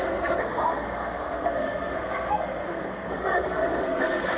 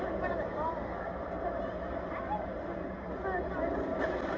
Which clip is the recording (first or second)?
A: second